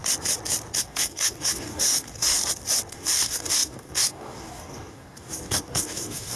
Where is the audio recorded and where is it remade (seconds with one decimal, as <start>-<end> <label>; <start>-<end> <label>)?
0.0-0.8 recorded; 0.8-2.4 remade; 2.4-2.9 recorded; 2.9-6.4 remade